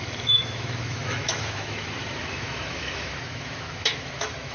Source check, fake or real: fake